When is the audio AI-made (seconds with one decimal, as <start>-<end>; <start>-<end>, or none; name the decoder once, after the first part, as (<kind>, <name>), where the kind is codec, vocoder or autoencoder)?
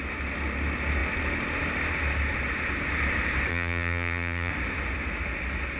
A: 3.5-4.5 (vocoder, BigVGAN v2)